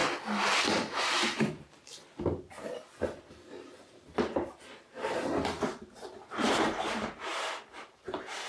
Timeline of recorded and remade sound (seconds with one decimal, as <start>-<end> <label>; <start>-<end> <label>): 0.0-0.6 recorded; 0.6-2.0 remade; 2.0-4.3 recorded; 4.3-7.3 remade; 7.3-7.9 recorded; 7.9-8.5 remade

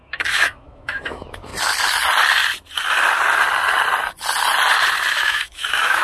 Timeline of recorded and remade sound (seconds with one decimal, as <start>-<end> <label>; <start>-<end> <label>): 0.0-1.5 remade; 1.5-5.1 recorded; 5.1-6.0 remade

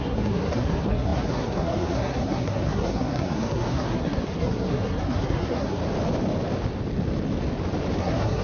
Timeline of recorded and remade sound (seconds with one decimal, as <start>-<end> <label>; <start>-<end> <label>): 0.0-5.8 remade; 5.8-8.0 recorded; 8.0-8.4 remade

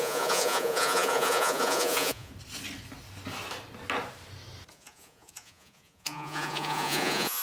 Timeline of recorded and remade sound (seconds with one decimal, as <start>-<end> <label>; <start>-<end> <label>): 0.0-2.3 remade; 2.3-4.7 recorded; 4.7-7.4 remade

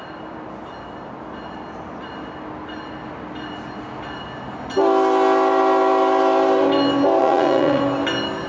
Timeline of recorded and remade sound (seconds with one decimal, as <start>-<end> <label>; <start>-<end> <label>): 0.0-7.2 recorded; 7.2-7.8 remade; 7.8-8.5 recorded

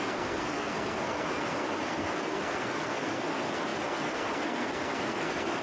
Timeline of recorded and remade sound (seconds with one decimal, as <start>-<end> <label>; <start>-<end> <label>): 0.0-5.6 remade